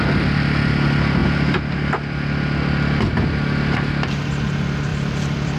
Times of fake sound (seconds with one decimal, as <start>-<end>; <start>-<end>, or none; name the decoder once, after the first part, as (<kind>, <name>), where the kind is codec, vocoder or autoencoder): 4.9-5.6 (vocoder, BigVGAN v2)

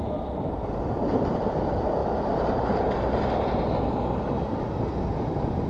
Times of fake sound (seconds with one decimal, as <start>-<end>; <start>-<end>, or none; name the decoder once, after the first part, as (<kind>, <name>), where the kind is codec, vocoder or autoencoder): 2.0-3.6 (vocoder, BigVGAN v2)

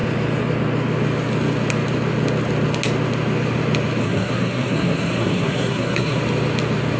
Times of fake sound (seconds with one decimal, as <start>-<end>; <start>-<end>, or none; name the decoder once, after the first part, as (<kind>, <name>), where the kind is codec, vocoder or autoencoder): 4.0-6.2 (codec, SNAC)

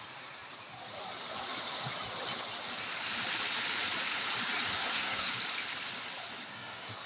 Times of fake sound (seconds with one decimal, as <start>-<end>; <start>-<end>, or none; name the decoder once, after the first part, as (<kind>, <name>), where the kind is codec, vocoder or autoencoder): 4.7-5.3 (codec, SNAC); 6.5-7.1

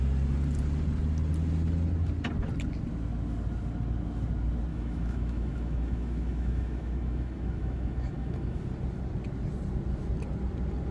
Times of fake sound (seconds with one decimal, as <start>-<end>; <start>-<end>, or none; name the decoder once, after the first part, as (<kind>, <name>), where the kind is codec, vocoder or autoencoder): 4.7-8.6 (autoencoder, DAC-VAE)

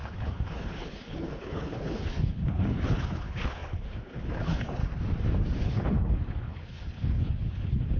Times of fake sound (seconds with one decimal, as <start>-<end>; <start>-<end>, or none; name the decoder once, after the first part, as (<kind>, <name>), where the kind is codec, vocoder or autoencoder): 0.0-4.8 (codec, HILCodec); 5.6-8.0